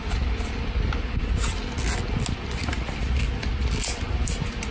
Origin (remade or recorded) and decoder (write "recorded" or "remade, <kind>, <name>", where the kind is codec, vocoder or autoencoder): recorded